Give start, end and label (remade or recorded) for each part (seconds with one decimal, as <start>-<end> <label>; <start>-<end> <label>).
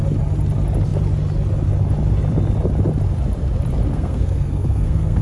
0.0-3.9 recorded; 3.9-5.2 remade